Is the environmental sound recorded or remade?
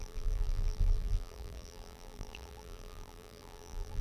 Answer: remade